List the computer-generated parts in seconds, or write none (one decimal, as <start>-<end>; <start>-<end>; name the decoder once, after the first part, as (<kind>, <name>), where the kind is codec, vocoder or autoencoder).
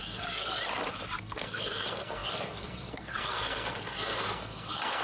0.0-0.6 (codec, SNAC); 1.2-5.0